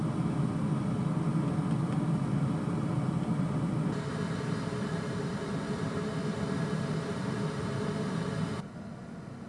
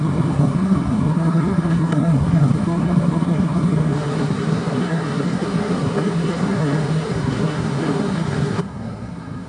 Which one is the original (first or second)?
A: first